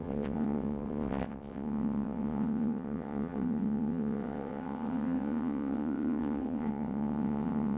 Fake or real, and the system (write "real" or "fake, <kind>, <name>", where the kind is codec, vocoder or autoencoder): fake, vocoder, WaveNeXt